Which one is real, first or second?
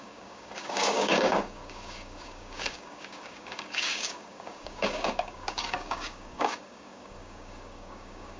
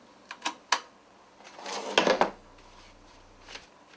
second